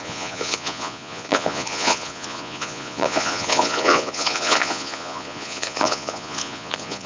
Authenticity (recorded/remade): remade